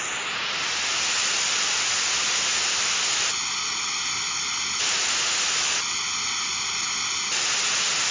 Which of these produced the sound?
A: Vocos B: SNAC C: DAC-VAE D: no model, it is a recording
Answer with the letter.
D